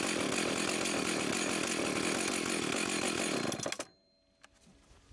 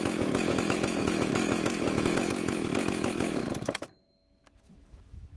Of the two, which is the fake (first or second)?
second